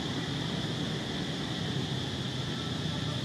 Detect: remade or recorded recorded